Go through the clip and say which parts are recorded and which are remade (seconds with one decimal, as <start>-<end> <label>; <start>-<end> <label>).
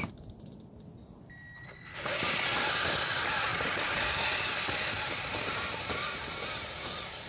0.0-7.3 recorded